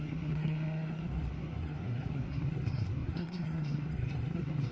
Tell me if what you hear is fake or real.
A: fake